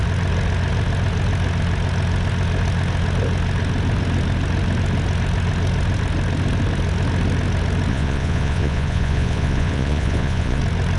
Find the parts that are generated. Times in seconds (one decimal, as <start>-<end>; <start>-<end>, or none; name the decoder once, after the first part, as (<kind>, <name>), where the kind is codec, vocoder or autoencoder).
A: 7.9-10.6 (vocoder, Vocos)